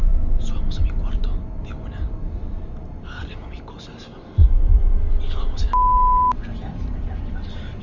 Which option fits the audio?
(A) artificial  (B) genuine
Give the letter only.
B